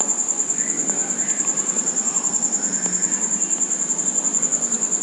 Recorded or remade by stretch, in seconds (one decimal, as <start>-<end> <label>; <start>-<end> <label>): 0.0-1.0 remade; 1.0-4.0 recorded; 4.0-5.0 remade